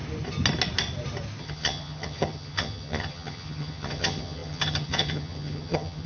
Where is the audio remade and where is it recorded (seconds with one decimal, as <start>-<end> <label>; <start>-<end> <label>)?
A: 0.0-1.4 recorded; 1.4-6.1 remade